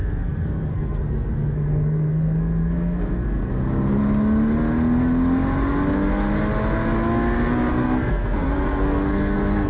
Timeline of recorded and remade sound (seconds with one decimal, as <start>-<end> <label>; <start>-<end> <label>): 0.0-3.5 remade; 3.5-7.7 recorded; 7.7-9.7 remade